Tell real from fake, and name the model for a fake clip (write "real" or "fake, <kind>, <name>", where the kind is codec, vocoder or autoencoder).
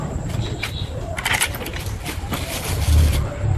real